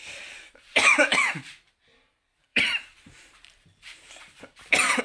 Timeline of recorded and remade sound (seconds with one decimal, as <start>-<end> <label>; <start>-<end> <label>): 0.0-1.3 remade; 1.3-2.5 recorded; 2.5-5.0 remade